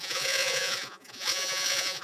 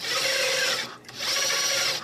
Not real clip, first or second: first